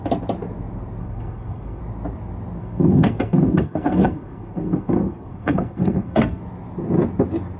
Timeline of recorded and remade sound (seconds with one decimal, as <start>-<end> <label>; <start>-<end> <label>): 0.0-1.0 recorded; 1.0-1.8 remade; 1.8-2.6 recorded; 2.6-6.4 remade; 6.4-7.6 recorded

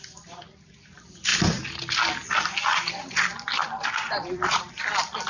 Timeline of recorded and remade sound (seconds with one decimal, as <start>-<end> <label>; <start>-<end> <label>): 0.0-1.3 remade; 1.3-4.1 recorded; 4.1-5.3 remade

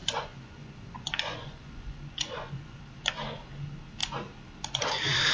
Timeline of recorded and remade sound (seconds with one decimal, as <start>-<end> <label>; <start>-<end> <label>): 0.0-2.8 remade; 2.8-5.3 recorded

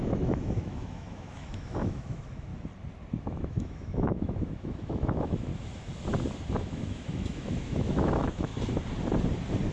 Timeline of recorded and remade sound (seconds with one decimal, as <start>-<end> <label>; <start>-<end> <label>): 0.0-2.5 remade; 2.5-3.2 recorded; 3.2-5.5 remade; 5.5-6.6 recorded; 6.6-8.5 remade; 8.5-9.7 recorded

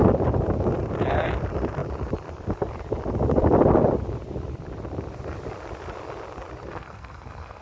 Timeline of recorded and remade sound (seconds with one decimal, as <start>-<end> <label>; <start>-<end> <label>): 0.0-6.7 recorded; 6.7-7.6 remade

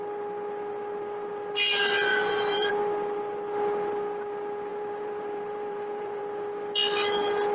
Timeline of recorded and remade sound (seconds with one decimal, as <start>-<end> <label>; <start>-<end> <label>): 0.0-2.1 recorded; 2.1-2.7 remade; 2.7-4.7 recorded; 4.7-6.2 remade; 6.2-7.5 recorded